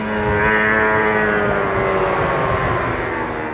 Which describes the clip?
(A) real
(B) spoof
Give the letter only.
A